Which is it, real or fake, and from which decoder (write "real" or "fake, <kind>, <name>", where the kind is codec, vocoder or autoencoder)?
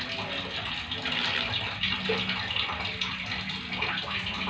real